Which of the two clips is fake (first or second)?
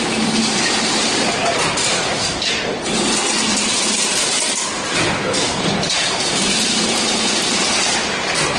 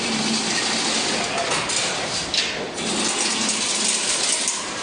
first